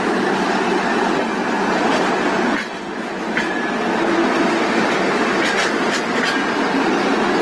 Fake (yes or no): no